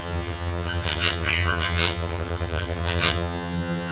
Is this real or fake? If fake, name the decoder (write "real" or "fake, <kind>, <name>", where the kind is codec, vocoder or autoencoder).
fake, vocoder, HiFi-GAN